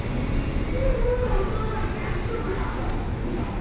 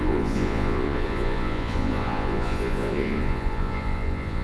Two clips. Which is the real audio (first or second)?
first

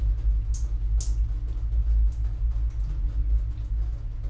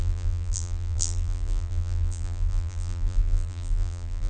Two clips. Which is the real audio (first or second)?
first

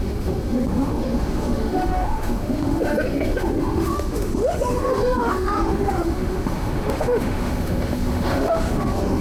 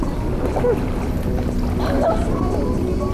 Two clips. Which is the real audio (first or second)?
second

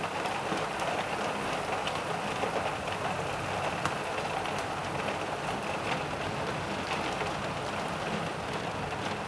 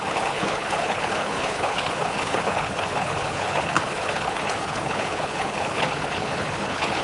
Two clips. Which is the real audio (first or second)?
first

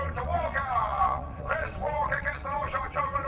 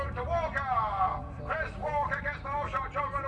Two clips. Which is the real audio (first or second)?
second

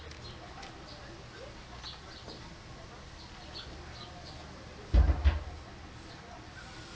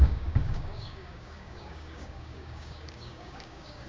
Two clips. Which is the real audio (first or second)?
first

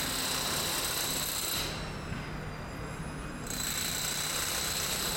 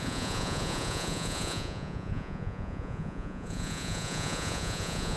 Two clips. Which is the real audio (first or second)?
first